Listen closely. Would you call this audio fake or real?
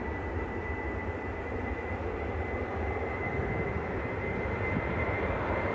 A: fake